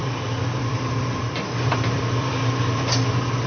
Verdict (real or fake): fake